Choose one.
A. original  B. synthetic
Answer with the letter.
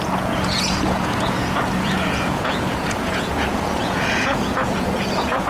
B